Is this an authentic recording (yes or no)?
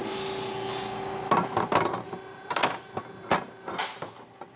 yes